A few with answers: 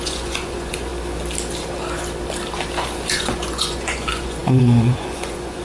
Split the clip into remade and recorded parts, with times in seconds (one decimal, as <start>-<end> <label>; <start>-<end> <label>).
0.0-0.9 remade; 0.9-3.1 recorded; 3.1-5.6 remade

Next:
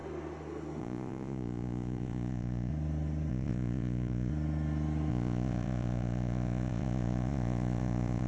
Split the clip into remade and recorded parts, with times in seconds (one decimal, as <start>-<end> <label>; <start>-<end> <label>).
0.0-0.8 recorded; 0.8-2.7 remade; 2.7-3.3 recorded; 3.3-4.3 remade; 4.3-5.1 recorded; 5.1-8.3 remade

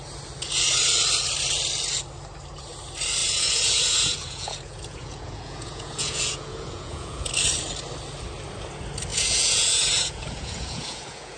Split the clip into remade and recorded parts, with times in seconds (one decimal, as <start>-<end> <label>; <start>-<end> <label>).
0.0-3.2 recorded; 3.2-7.3 remade; 7.3-9.1 recorded; 9.1-11.4 remade

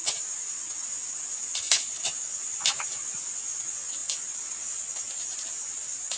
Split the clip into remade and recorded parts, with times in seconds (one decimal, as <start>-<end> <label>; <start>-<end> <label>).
0.0-6.2 recorded

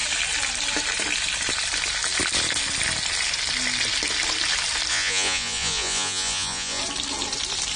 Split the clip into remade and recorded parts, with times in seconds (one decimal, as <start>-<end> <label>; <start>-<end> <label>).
0.0-4.9 recorded; 4.9-6.8 remade; 6.8-7.8 recorded

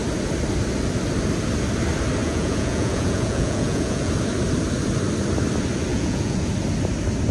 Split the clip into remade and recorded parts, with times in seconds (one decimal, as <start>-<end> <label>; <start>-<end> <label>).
0.0-2.2 recorded; 2.2-4.1 remade; 4.1-5.9 recorded; 5.9-6.5 remade; 6.5-7.3 recorded

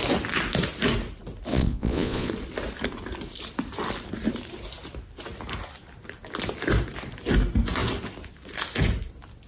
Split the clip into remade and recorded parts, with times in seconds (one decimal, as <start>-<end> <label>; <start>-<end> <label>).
0.0-1.5 recorded; 1.5-2.3 remade; 2.3-9.5 recorded